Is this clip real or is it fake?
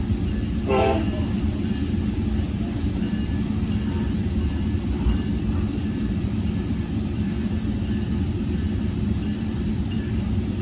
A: fake